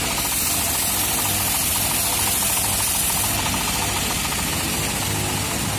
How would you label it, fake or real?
real